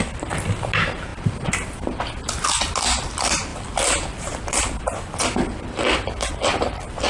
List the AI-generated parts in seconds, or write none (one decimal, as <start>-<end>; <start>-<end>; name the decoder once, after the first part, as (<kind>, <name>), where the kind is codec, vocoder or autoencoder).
1.1-2.7 (vocoder, BigVGAN v2); 3.5-6.3